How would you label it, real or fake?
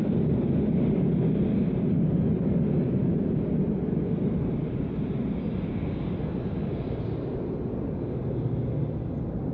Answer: real